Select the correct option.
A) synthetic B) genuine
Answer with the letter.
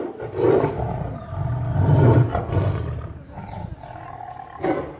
B